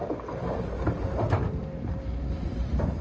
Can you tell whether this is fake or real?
real